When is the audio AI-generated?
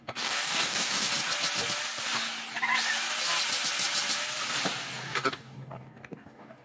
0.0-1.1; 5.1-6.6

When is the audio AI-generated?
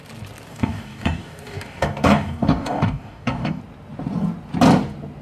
0.5-3.6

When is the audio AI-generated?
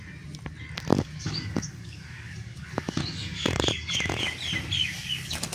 0.9-4.2; 4.8-5.5